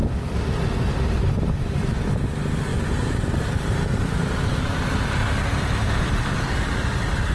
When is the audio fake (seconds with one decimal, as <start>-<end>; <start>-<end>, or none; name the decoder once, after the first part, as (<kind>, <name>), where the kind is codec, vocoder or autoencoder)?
none